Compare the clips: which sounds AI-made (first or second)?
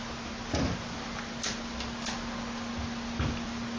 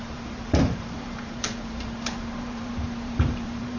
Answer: second